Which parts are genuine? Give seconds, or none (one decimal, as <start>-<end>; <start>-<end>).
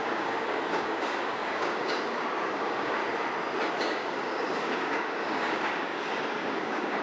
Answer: 3.0-3.7